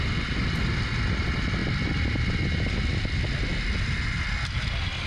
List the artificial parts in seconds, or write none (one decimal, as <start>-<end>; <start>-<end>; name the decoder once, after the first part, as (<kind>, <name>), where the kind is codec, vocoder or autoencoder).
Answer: none